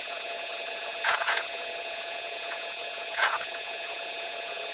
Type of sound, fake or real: fake